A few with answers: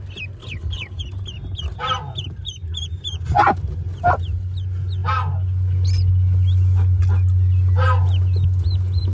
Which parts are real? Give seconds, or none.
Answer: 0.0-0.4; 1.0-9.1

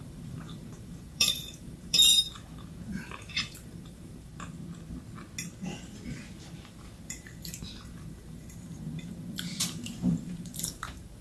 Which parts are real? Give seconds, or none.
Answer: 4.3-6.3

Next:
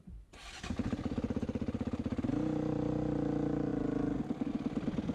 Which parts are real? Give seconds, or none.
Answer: 0.0-5.1

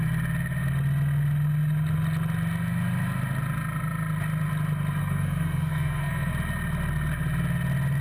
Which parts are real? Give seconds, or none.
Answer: 0.0-5.0; 6.3-8.0

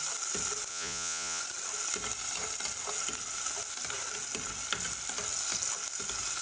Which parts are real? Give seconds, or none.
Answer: 0.0-0.7; 1.4-6.4

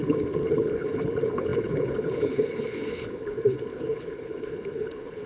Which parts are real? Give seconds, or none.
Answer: none

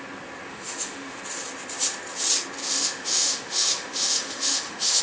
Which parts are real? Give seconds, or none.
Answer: 0.0-0.5; 1.2-2.6

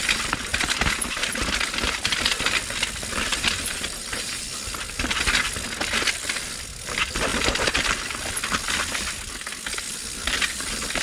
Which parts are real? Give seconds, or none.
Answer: 0.0-0.5; 1.3-3.3; 4.4-11.0